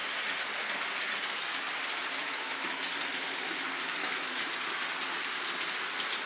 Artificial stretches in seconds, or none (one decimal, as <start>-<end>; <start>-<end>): 2.2-2.8; 4.0-4.5